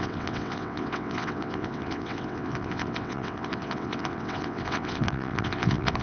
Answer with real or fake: fake